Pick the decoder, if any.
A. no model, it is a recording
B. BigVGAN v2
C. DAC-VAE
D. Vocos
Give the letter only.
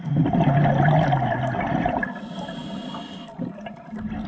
A